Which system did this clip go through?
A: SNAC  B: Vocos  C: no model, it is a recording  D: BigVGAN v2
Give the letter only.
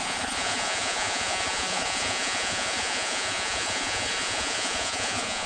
B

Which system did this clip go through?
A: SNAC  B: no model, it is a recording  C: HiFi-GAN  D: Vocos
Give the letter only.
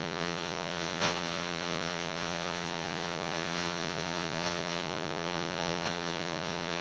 D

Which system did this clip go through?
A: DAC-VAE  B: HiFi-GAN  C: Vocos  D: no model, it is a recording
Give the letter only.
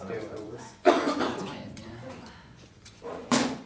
C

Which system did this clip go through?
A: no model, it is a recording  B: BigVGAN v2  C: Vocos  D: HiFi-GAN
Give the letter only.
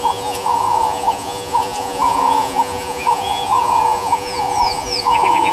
C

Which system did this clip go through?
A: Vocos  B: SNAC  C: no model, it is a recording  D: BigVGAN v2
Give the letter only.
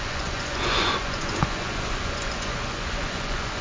A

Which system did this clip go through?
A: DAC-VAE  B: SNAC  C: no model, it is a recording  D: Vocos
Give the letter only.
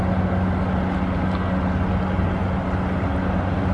C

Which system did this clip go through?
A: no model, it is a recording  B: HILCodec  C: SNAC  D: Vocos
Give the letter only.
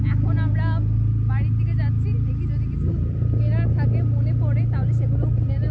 A